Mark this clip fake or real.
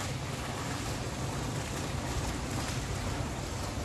real